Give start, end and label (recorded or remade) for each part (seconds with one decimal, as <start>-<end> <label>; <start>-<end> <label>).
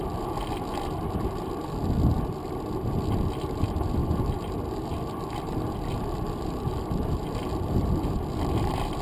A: 0.0-4.0 recorded; 4.0-9.0 remade